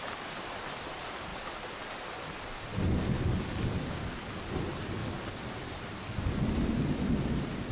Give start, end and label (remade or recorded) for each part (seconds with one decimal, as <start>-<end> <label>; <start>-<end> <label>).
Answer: 0.0-7.7 recorded